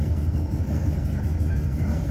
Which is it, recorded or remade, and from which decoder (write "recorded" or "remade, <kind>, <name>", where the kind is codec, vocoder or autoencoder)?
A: remade, codec, SNAC